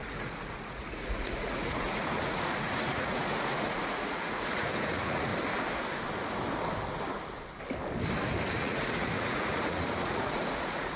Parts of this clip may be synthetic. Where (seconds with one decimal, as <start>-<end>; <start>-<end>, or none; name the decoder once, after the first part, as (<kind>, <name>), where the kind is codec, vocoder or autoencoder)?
0.0-5.3 (vocoder, Vocos); 8.5-11.0